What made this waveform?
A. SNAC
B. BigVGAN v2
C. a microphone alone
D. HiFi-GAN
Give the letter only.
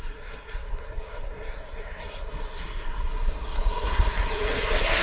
A